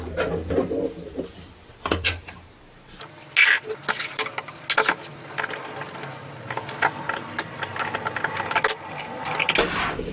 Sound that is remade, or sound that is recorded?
recorded